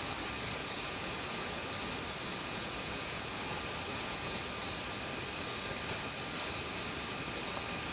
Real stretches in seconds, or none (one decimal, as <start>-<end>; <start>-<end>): 0.0-0.6; 1.7-2.3; 3.4-3.9; 4.4-7.9